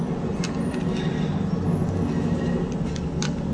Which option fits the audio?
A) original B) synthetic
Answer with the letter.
A